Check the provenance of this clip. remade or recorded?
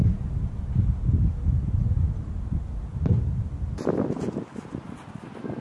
recorded